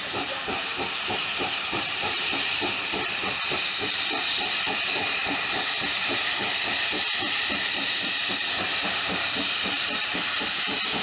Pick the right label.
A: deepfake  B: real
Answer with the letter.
A